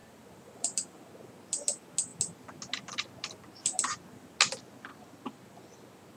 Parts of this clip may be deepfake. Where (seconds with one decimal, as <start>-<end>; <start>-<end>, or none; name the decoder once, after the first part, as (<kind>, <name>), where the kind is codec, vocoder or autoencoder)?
0.0-1.1 (vocoder, BigVGAN v2); 4.9-6.2